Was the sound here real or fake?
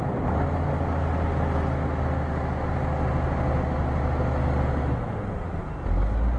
real